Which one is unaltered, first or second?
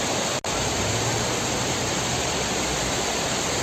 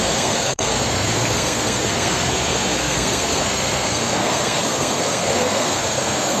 first